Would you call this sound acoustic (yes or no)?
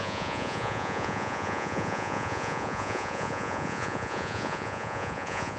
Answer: no